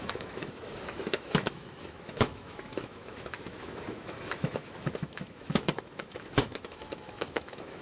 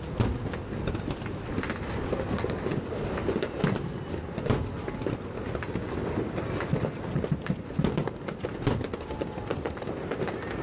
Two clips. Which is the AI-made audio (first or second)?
first